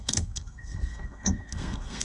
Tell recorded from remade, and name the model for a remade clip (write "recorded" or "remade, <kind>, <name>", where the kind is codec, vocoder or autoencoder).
remade, codec, SNAC